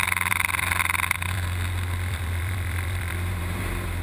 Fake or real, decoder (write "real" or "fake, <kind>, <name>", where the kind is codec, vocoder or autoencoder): fake, vocoder, BigVGAN v2